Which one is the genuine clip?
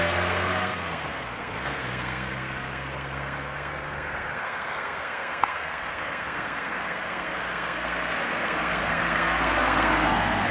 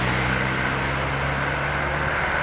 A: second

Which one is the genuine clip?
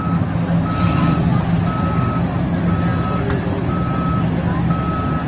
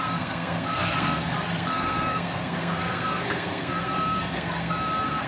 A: first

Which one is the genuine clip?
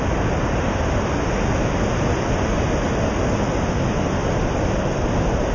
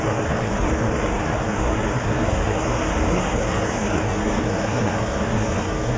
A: first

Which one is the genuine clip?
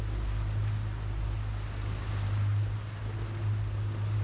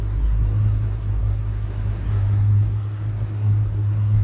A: first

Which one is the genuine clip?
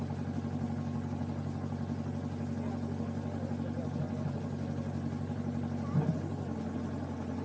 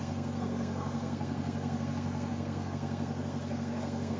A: first